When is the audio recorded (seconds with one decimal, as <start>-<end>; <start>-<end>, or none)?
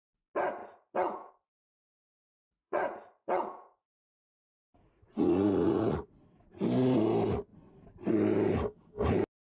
0.0-0.6; 1.3-2.0; 6.2-9.5